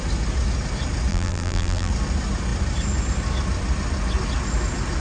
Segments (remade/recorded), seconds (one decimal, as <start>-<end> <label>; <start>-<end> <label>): 0.0-1.1 recorded; 1.1-1.9 remade; 1.9-5.0 recorded